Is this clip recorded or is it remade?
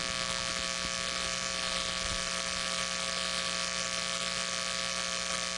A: recorded